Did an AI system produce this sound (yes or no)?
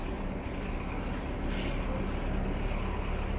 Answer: no